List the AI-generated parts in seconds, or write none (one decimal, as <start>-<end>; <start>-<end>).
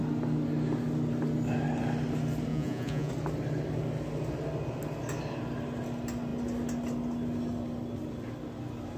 2.5-3.1